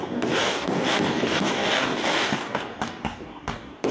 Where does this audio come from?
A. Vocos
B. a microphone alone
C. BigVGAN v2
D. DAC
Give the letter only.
D